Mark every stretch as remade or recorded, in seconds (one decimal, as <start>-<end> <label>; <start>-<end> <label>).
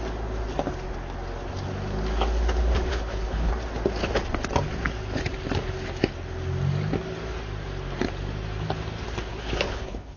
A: 0.0-2.9 recorded; 2.9-3.5 remade; 3.5-9.3 recorded; 9.3-10.2 remade